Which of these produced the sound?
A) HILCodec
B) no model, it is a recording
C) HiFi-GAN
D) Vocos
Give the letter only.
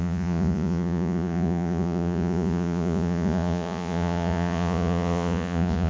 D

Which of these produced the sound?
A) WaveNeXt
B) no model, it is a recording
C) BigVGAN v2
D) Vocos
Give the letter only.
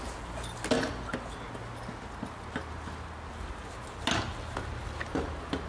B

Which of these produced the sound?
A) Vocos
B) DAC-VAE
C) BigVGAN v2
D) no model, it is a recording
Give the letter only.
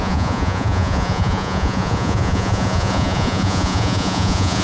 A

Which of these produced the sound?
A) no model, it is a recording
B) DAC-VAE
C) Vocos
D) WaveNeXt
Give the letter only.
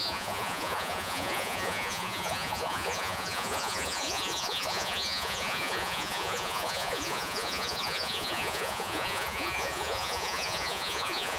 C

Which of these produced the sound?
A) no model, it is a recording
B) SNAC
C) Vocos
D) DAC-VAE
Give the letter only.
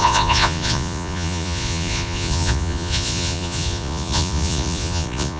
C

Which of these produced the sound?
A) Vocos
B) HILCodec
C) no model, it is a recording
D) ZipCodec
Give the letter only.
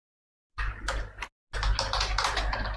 C